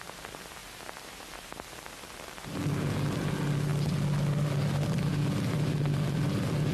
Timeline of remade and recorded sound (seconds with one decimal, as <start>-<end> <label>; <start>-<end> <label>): 0.0-6.7 recorded